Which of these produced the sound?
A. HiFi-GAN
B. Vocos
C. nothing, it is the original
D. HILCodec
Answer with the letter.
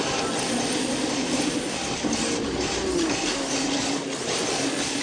C